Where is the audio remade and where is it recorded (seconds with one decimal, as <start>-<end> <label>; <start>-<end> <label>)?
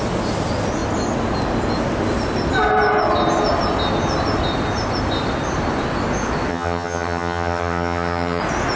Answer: 0.0-6.5 recorded; 6.5-8.4 remade; 8.4-8.8 recorded